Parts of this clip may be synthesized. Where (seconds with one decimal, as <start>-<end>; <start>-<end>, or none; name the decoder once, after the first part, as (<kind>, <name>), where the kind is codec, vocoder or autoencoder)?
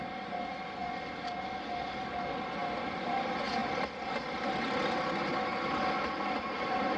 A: none